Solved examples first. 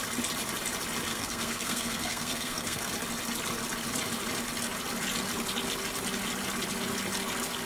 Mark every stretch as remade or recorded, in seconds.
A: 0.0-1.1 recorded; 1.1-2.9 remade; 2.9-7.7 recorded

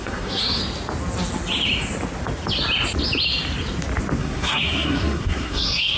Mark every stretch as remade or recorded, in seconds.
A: 0.0-0.6 remade; 0.6-4.2 recorded; 4.2-6.0 remade